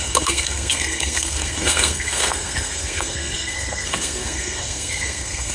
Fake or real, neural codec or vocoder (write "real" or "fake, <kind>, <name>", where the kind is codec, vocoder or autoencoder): fake, codec, SNAC